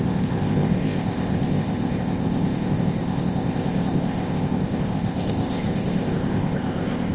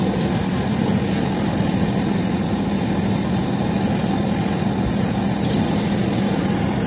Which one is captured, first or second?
second